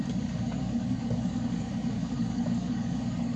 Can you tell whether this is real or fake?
fake